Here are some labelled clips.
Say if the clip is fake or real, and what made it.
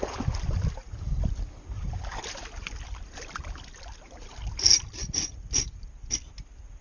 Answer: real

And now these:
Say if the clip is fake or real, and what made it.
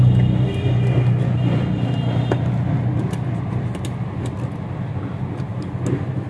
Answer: real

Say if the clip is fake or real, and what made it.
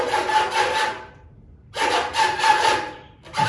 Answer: real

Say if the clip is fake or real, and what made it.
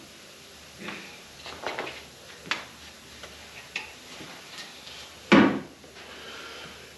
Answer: real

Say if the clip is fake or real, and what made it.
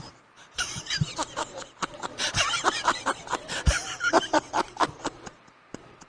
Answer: fake, vocoder, BigVGAN v2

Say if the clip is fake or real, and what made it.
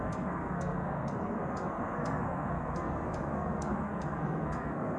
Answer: fake, codec, SNAC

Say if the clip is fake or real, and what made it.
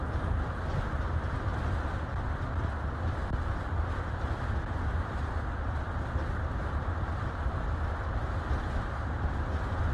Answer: real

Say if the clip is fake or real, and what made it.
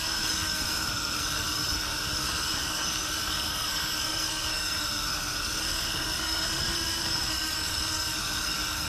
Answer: fake, codec, SNAC